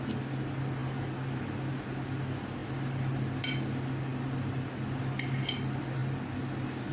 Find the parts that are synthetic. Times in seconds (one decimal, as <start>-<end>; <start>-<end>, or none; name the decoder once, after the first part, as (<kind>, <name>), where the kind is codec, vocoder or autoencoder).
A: none